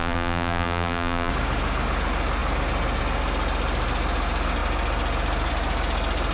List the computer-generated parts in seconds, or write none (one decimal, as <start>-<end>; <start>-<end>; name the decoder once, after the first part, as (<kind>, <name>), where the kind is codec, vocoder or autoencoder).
0.0-1.3 (vocoder, BigVGAN v2)